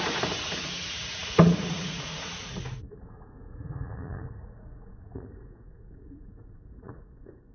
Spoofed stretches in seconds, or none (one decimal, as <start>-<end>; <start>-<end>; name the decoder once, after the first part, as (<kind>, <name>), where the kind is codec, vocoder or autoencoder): 0.0-7.5 (vocoder, Vocos)